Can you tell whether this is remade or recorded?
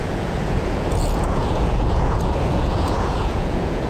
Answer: remade